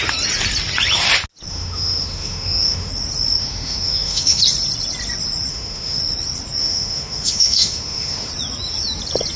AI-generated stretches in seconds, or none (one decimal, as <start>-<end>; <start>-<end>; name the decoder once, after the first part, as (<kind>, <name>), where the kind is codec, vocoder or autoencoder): 1.5-2.9 (autoencoder, DAC-VAE); 3.4-4.4; 5.5-6.0; 6.6-8.3